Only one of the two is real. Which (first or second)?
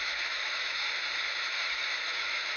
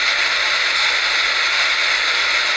second